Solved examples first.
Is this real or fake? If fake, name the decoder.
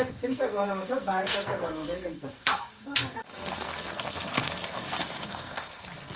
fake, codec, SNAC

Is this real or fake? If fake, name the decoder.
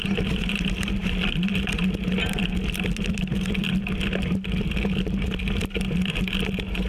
real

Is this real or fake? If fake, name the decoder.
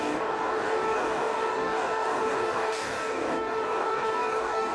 fake, codec, DAC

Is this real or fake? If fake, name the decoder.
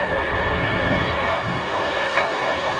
fake, codec, SNAC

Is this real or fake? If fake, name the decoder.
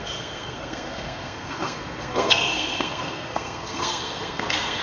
fake, codec, SNAC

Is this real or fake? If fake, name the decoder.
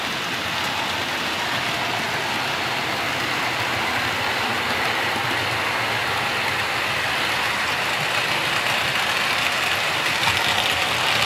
real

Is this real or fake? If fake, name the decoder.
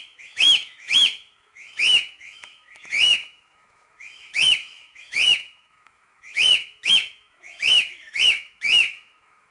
fake, autoencoder, DAC-VAE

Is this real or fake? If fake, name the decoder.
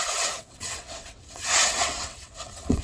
fake, vocoder, WaveNeXt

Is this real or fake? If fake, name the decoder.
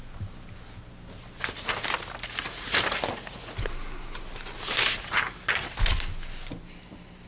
real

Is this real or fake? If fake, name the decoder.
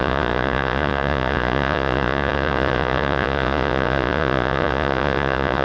fake, vocoder, Vocos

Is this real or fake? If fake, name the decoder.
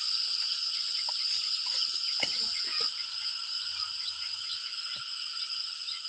fake, vocoder, BigVGAN v2